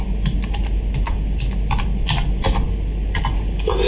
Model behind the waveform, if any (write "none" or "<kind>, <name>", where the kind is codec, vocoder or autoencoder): vocoder, BigVGAN v2